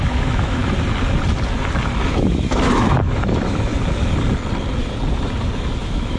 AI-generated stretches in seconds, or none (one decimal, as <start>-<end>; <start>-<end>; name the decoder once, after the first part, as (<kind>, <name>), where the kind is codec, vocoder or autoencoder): 0.0-0.6 (autoencoder, DAC-VAE); 2.1-3.7; 5.8-6.2